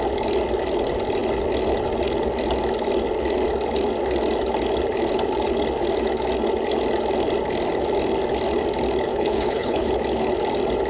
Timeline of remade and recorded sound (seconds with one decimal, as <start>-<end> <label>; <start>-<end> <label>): 0.0-9.1 recorded; 9.1-9.9 remade; 9.9-10.9 recorded